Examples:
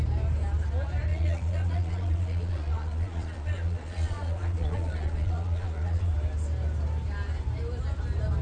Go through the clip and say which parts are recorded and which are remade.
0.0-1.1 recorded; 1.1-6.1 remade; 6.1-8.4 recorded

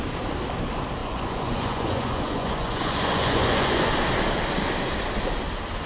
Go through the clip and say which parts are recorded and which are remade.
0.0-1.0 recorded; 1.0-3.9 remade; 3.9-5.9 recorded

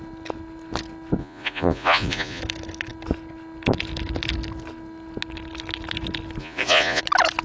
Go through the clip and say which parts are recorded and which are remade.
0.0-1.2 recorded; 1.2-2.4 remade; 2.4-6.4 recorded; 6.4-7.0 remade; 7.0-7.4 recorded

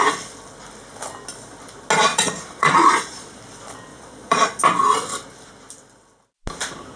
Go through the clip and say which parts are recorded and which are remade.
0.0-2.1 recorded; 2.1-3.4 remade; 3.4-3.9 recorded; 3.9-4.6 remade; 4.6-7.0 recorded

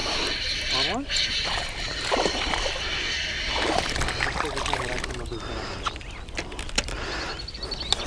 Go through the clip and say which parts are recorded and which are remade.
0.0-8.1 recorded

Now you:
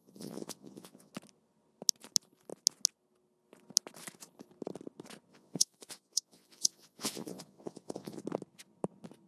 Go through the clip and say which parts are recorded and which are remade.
0.0-1.1 remade; 1.1-5.3 recorded; 5.3-8.2 remade; 8.2-9.3 recorded

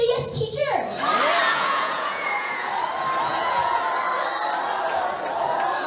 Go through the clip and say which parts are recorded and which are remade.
0.0-1.4 recorded; 1.4-2.7 remade; 2.7-3.3 recorded; 3.3-3.8 remade; 3.8-5.9 recorded